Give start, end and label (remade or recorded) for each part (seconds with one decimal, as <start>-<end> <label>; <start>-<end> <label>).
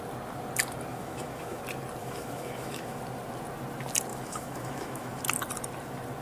0.0-0.9 recorded; 0.9-1.6 remade; 1.6-2.0 recorded; 2.0-3.0 remade; 3.0-4.1 recorded; 4.1-5.2 remade; 5.2-6.2 recorded